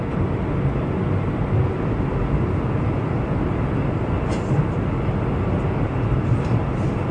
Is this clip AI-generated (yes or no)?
no